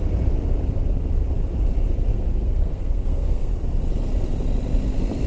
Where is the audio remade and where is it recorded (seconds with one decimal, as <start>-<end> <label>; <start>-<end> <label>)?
0.0-2.1 recorded; 2.1-3.5 remade; 3.5-5.3 recorded